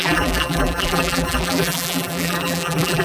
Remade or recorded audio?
remade